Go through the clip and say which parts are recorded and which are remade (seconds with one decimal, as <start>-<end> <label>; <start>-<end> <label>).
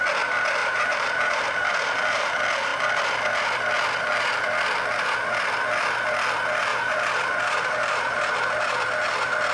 0.0-0.6 recorded; 0.6-2.3 remade; 2.3-6.7 recorded; 6.7-8.2 remade; 8.2-9.5 recorded